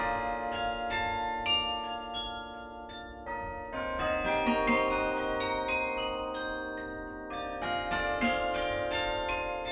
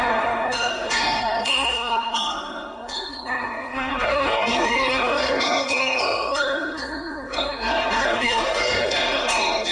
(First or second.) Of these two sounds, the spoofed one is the second